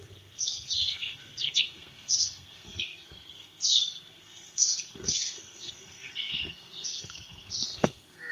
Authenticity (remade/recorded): remade